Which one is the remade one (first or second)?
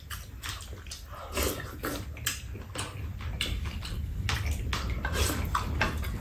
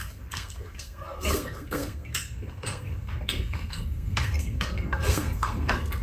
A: second